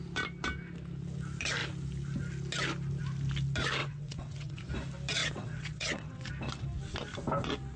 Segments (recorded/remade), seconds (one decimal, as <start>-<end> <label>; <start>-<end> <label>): 0.0-3.8 recorded; 3.8-4.7 remade; 4.7-5.2 recorded; 5.2-6.3 remade; 6.3-7.8 recorded